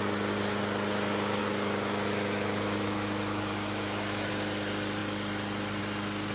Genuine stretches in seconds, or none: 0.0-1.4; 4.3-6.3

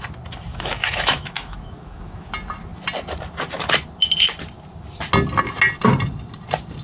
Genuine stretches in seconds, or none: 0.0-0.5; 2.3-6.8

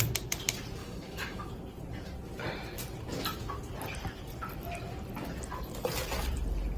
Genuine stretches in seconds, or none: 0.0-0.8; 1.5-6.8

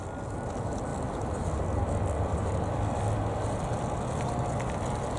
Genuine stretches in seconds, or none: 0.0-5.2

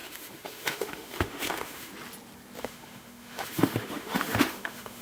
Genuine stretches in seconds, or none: 1.9-2.6

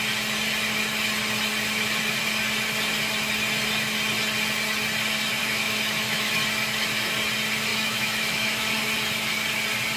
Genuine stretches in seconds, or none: 0.0-5.4; 6.3-7.7; 8.7-10.0

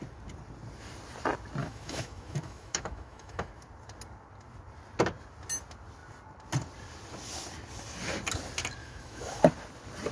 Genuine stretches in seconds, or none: 0.0-1.6; 3.5-8.8; 9.4-10.1